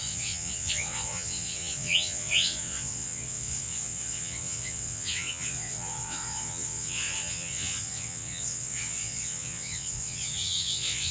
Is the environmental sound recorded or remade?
remade